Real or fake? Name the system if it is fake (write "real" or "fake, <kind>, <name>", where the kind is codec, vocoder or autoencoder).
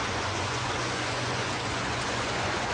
fake, vocoder, Vocos